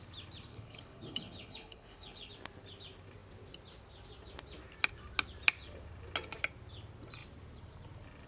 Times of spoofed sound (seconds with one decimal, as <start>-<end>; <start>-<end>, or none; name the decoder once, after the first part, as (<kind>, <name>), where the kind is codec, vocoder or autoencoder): 0.5-2.3 (codec, HILCodec)